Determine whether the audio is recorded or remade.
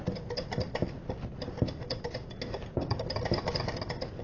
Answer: recorded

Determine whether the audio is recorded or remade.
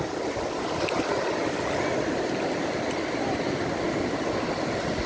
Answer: recorded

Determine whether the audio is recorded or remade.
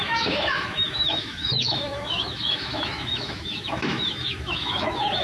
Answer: remade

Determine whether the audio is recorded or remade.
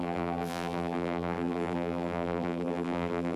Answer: remade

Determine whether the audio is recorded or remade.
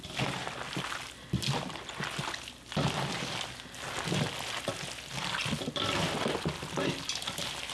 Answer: recorded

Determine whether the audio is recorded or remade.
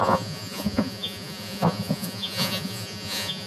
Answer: remade